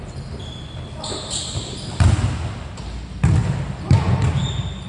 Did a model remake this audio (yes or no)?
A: no